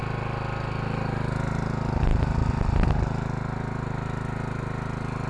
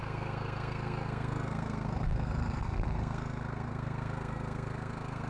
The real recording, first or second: first